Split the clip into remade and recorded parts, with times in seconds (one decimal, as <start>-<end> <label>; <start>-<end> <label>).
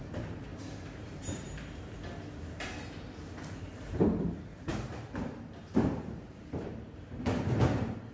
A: 0.0-0.5 remade; 0.5-3.6 recorded; 3.6-8.1 remade